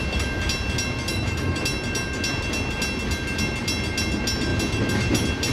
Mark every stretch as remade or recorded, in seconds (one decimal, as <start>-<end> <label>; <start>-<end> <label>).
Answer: 0.0-1.1 recorded; 1.1-1.6 remade; 1.6-5.5 recorded